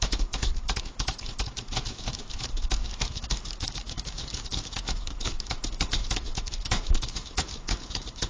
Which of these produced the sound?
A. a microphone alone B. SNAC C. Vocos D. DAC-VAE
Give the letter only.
D